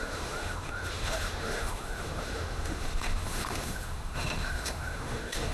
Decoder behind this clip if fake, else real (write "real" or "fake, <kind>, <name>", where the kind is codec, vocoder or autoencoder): fake, autoencoder, DAC-VAE